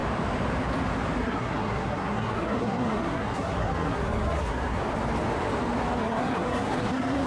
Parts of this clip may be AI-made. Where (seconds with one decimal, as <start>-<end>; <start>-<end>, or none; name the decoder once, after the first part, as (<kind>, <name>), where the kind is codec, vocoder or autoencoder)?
1.2-4.8 (codec, SNAC); 6.0-7.3